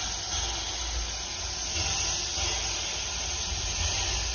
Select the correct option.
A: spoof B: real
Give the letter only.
B